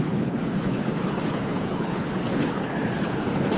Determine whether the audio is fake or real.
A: fake